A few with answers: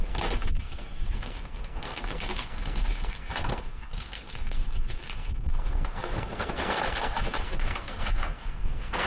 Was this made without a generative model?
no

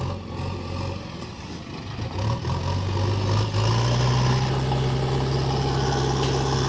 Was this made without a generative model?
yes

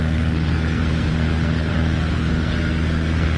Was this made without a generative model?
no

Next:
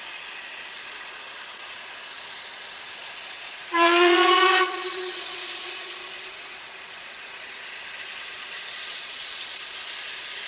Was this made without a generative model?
no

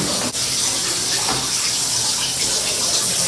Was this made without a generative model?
yes